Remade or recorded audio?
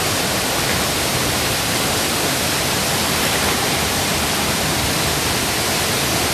remade